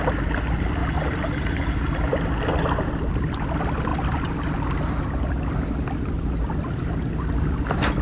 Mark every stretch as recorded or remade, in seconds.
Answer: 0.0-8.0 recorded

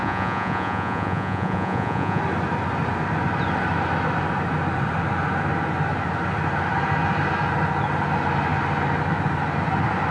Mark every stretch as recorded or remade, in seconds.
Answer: 0.0-2.2 remade; 2.2-10.1 recorded

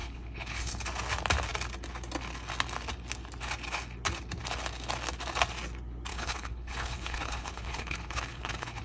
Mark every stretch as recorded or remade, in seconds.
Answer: 0.0-0.8 remade; 0.8-6.1 recorded; 6.1-8.8 remade

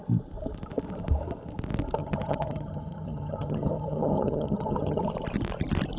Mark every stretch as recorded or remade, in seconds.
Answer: 0.0-2.0 recorded; 2.0-5.0 remade; 5.0-6.0 recorded

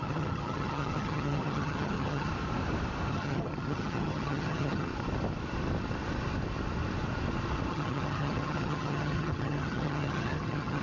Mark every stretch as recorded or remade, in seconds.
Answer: 0.0-2.3 remade; 2.3-3.1 recorded; 3.1-4.9 remade; 4.9-7.7 recorded; 7.7-10.8 remade